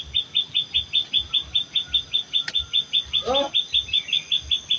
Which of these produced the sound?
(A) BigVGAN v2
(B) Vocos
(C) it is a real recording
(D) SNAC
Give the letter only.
C